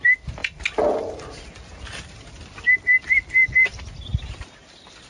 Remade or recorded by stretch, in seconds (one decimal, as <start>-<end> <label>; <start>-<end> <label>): 0.0-5.1 recorded